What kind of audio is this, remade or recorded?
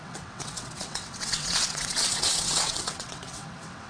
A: remade